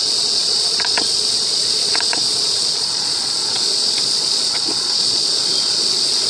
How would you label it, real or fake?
fake